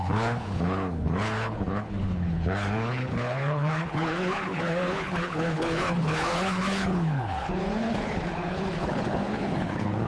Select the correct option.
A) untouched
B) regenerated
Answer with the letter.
B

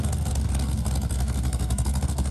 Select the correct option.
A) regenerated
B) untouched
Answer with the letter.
A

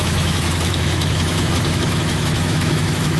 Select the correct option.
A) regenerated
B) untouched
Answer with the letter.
A